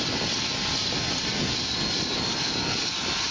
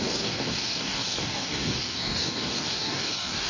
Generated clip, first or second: second